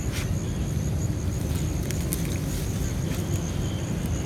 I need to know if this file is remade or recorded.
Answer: recorded